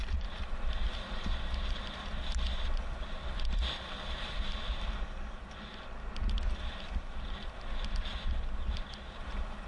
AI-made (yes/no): no